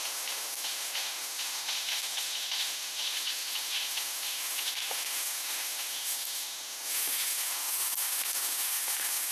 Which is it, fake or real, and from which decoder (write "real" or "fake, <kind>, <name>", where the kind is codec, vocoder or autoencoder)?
fake, autoencoder, DAC-VAE